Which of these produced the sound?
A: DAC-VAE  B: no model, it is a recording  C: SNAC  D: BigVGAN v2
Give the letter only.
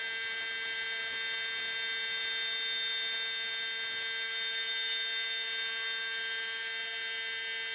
B